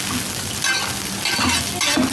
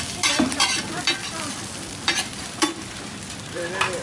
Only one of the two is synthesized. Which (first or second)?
second